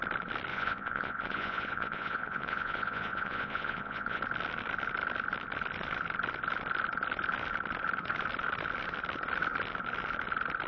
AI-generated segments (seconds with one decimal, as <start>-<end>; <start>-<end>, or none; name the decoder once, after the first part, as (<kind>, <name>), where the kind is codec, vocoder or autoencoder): 0.5-4.2 (vocoder, Vocos)